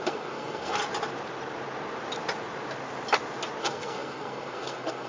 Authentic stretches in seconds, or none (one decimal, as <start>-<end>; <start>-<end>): 0.8-3.6